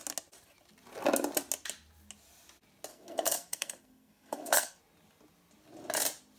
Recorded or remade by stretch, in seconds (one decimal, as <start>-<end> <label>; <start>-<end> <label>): 0.0-2.9 recorded; 2.9-4.8 remade; 4.8-6.4 recorded

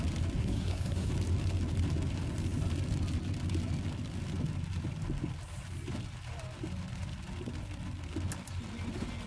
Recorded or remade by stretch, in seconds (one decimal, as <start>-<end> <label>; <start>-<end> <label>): 0.0-0.4 recorded; 0.4-1.1 remade; 1.1-9.3 recorded

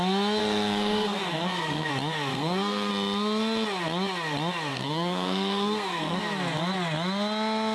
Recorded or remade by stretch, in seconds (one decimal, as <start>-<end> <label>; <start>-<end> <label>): 0.0-0.4 recorded; 0.4-1.9 remade; 1.9-2.3 recorded; 2.3-2.9 remade; 2.9-4.7 recorded; 4.7-6.2 remade; 6.2-7.7 recorded

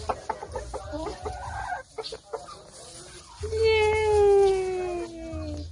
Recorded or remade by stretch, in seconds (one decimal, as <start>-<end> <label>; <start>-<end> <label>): 0.0-5.7 recorded